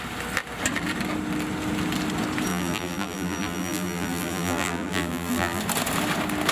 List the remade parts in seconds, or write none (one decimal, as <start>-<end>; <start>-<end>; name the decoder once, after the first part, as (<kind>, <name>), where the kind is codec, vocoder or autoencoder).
2.5-5.6 (vocoder, BigVGAN v2)